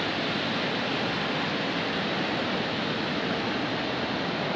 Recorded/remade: recorded